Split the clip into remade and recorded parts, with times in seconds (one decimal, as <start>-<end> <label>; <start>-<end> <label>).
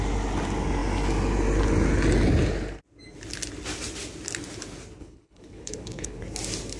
0.0-5.0 recorded; 5.0-6.2 remade; 6.2-6.8 recorded